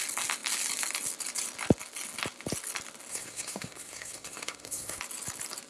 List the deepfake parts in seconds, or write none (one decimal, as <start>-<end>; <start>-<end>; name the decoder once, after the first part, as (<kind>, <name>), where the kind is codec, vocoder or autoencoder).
3.1-5.0 (codec, SNAC)